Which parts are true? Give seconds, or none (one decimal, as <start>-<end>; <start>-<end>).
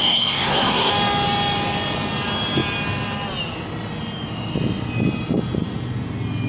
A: 0.9-6.5